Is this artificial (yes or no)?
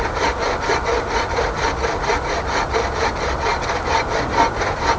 no